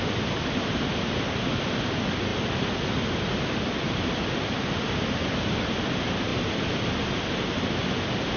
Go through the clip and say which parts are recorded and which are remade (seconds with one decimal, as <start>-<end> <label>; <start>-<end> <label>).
0.0-8.4 recorded